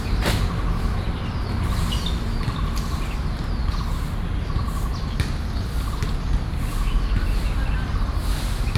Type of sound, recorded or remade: recorded